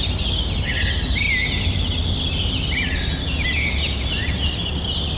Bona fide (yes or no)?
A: yes